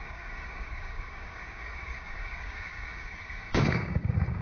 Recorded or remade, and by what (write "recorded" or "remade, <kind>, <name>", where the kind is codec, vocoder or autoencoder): remade, codec, DAC